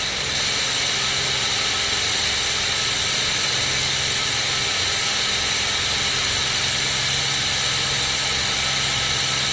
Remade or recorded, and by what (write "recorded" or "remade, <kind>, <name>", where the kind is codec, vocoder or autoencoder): recorded